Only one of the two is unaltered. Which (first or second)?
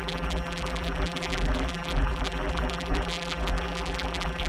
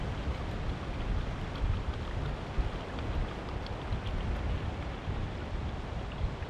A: second